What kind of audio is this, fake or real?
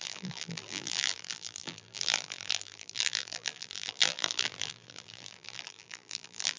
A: fake